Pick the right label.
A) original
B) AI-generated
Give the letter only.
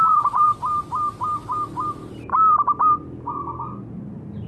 A